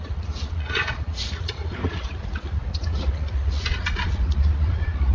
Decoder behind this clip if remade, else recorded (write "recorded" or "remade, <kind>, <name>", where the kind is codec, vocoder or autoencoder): remade, vocoder, Vocos